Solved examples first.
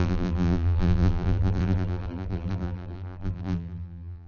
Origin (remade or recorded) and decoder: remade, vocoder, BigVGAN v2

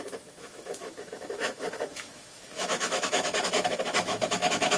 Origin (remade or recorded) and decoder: remade, autoencoder, DAC-VAE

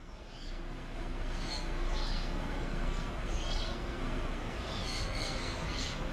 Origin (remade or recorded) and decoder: remade, codec, SNAC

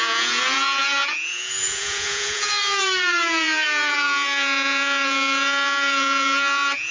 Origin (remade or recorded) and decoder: remade, vocoder, Vocos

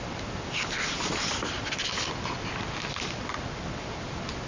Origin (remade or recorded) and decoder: recorded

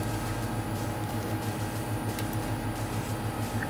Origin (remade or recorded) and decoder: recorded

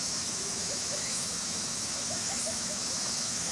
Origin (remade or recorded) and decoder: remade, autoencoder, DAC-VAE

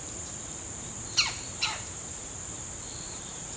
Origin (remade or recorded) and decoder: remade, vocoder, BigVGAN v2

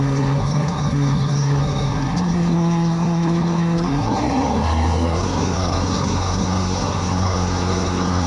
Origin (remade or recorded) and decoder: remade, codec, SNAC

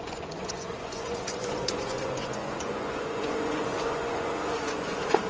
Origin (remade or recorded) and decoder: remade, vocoder, Vocos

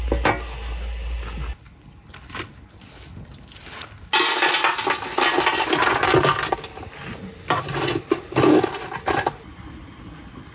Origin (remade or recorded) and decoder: recorded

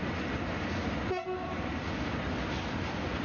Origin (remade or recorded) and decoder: recorded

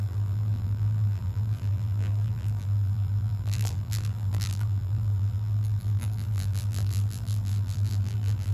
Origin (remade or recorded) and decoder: remade, vocoder, BigVGAN v2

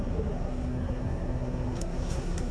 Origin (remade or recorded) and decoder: remade, codec, SNAC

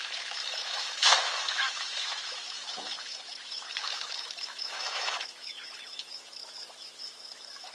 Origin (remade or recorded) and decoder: remade, autoencoder, DAC-VAE